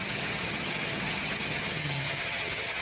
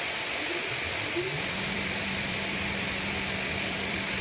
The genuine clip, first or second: second